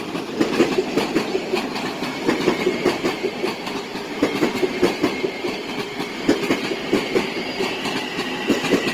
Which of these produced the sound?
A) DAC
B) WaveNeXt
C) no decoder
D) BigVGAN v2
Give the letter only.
C